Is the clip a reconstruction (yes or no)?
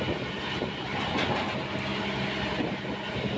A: no